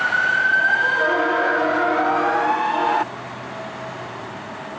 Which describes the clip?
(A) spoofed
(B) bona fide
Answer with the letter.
B